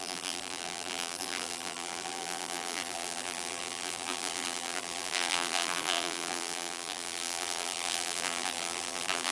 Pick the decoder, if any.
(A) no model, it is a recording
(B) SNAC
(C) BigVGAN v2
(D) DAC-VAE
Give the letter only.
C